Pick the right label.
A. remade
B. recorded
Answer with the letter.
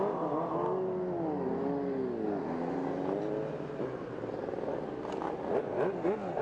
B